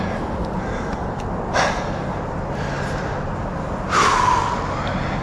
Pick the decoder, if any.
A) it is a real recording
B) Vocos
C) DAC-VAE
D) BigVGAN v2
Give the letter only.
A